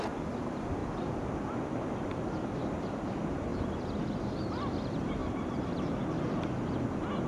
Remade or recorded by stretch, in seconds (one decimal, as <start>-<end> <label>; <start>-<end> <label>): 0.0-3.5 recorded; 3.5-4.5 remade; 4.5-5.2 recorded; 5.2-6.2 remade; 6.2-7.3 recorded